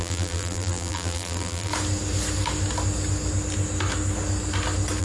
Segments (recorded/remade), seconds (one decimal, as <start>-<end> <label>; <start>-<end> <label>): 0.0-1.7 remade; 1.7-5.0 recorded